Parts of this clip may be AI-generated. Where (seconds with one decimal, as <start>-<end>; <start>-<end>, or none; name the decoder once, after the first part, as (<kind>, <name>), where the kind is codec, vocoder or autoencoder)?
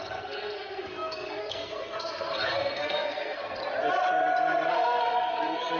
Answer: 0.0-3.6 (codec, SNAC); 4.7-5.8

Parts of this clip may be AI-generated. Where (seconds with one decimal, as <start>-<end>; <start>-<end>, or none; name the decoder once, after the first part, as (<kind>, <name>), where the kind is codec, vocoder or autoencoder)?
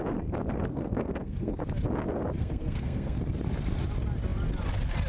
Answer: 0.7-1.6 (codec, SNAC); 2.4-3.2